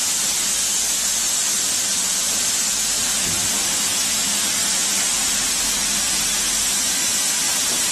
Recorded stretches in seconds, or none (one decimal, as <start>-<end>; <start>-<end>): 0.0-1.4; 2.4-4.6; 5.5-7.9